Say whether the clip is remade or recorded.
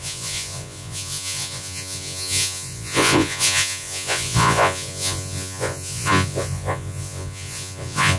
remade